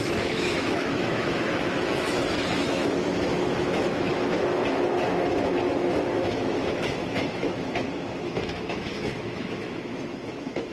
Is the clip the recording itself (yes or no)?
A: no